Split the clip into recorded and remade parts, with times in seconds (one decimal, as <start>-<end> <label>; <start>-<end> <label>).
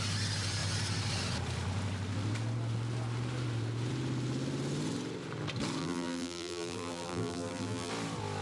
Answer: 0.0-5.8 recorded; 5.8-7.9 remade; 7.9-8.4 recorded